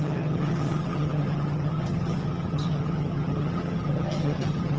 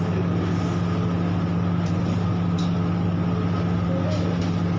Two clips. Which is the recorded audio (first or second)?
second